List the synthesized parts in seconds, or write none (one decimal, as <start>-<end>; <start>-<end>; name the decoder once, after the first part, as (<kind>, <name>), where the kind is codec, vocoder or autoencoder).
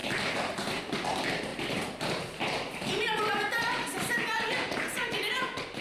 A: 0.0-0.8 (vocoder, BigVGAN v2); 1.5-5.0